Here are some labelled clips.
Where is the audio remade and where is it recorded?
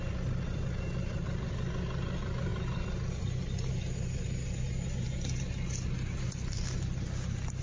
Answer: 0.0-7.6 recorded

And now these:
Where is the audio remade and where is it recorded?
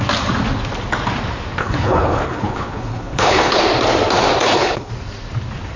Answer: 0.0-1.6 recorded; 1.6-3.6 remade; 3.6-4.4 recorded; 4.4-4.9 remade; 4.9-5.8 recorded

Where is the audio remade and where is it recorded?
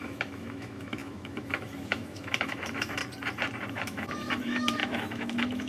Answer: 0.0-3.0 remade; 3.0-3.7 recorded; 3.7-5.7 remade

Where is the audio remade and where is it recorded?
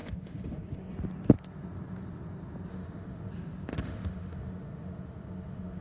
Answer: 0.0-0.9 remade; 0.9-2.7 recorded; 2.7-3.3 remade; 3.3-3.7 recorded; 3.7-5.8 remade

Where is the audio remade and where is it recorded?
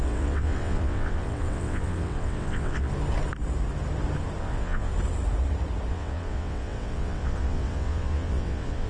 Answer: 0.0-2.9 remade; 2.9-4.4 recorded; 4.4-4.9 remade; 4.9-5.9 recorded; 5.9-8.9 remade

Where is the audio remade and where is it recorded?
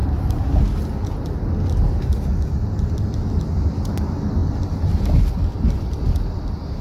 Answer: 0.0-6.8 recorded